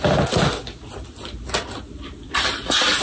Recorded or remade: recorded